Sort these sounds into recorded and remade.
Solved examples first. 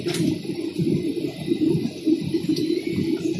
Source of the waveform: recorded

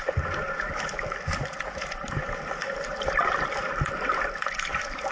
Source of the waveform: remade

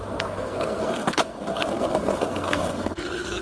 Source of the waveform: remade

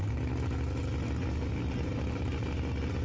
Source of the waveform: recorded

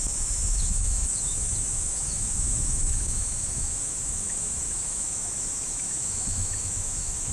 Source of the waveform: remade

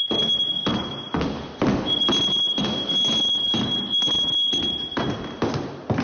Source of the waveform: recorded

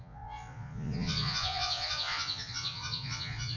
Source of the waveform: remade